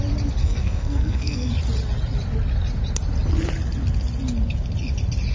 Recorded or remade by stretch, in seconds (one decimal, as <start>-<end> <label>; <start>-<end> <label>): 0.0-0.4 recorded; 0.4-1.5 remade; 1.5-5.3 recorded